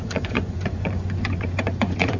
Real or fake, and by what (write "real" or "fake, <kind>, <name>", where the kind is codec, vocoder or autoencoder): fake, vocoder, Vocos